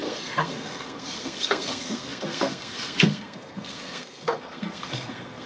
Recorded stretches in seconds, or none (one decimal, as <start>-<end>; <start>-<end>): none